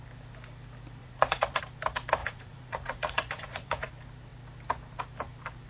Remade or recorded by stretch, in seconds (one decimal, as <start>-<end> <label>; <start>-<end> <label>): 0.0-1.0 recorded; 1.0-1.6 remade; 1.6-2.2 recorded; 2.2-3.9 remade; 3.9-5.7 recorded